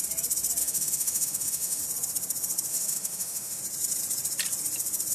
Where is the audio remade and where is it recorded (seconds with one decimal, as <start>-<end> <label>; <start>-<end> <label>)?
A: 0.0-0.6 recorded; 0.6-1.8 remade; 1.8-2.7 recorded; 2.7-3.6 remade; 3.6-5.1 recorded